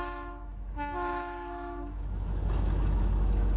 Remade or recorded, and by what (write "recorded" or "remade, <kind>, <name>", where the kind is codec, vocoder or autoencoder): remade, autoencoder, DAC-VAE